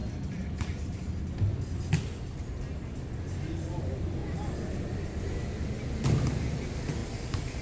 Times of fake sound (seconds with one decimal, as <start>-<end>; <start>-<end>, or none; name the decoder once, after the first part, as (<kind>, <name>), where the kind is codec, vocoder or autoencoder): 0.0-1.9 (vocoder, BigVGAN v2)